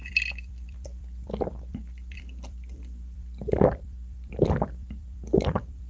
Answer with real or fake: fake